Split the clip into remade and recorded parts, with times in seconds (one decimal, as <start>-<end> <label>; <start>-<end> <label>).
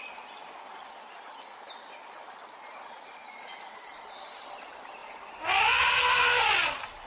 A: 0.0-7.1 recorded